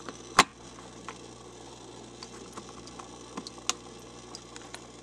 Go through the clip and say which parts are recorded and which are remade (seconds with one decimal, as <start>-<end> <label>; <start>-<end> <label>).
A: 0.0-5.0 recorded